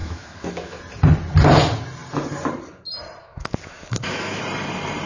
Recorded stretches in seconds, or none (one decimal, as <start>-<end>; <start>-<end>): 0.8-3.2; 4.4-5.1